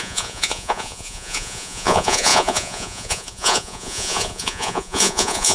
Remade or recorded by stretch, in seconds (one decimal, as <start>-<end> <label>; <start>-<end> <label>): 0.0-5.5 remade